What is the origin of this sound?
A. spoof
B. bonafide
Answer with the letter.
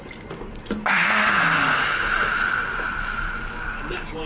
B